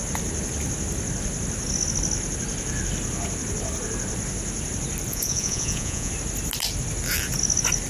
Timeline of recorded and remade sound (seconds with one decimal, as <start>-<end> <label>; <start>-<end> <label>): 0.0-5.1 recorded; 5.1-6.1 remade; 6.1-7.9 recorded

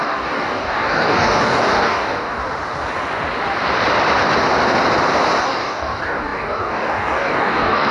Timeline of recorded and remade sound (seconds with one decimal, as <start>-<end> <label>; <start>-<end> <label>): 0.0-2.4 remade; 2.4-5.4 recorded; 5.4-7.9 remade

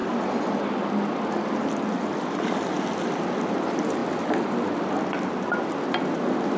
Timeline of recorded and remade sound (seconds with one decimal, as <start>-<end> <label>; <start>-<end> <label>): 0.0-6.6 recorded

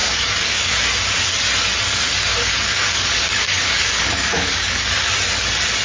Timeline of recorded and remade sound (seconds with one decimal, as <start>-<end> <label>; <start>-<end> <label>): 0.0-0.7 remade; 0.7-2.3 recorded; 2.3-4.9 remade; 4.9-5.8 recorded

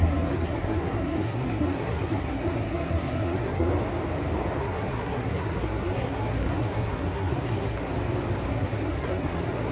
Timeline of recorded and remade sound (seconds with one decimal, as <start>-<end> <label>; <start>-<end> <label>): 0.0-3.7 remade; 3.7-4.6 recorded; 4.6-7.9 remade; 7.9-8.5 recorded; 8.5-9.7 remade